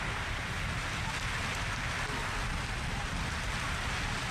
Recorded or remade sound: recorded